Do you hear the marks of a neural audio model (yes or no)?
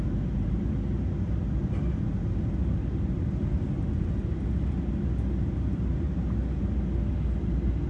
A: no